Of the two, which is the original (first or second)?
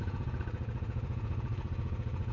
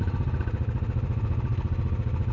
second